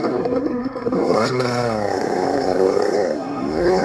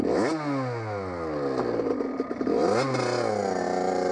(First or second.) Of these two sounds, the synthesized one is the first